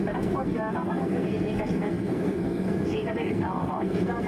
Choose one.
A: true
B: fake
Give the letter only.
B